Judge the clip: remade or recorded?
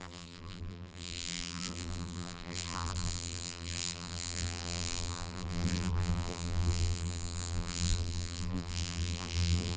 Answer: remade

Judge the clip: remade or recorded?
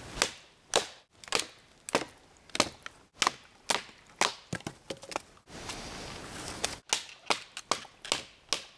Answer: recorded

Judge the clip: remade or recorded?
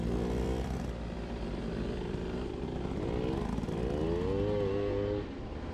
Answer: recorded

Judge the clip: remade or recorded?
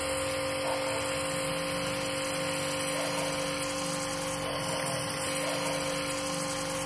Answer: recorded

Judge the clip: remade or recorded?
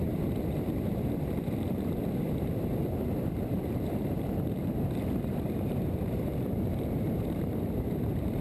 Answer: remade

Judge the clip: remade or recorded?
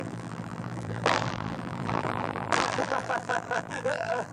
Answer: remade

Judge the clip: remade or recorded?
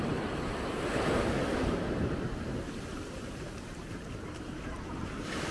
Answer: remade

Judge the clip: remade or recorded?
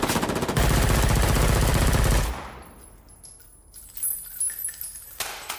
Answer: recorded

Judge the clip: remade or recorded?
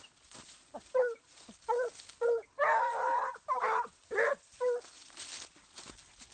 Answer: recorded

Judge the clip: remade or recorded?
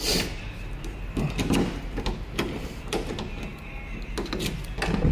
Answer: recorded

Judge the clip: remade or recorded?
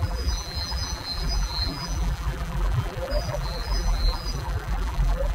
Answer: remade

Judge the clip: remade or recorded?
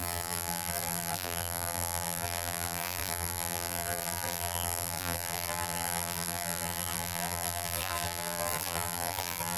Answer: remade